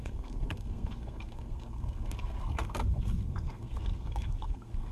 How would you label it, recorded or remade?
remade